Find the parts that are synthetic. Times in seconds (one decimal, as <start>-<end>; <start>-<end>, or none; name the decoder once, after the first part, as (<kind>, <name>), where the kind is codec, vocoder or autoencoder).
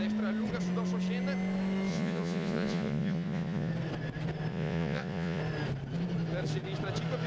1.9-3.7 (vocoder, Vocos); 4.5-5.4